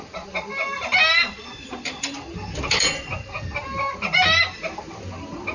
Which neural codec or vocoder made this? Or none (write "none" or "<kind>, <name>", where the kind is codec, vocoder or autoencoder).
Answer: none